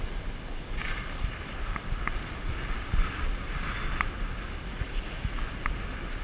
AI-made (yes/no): no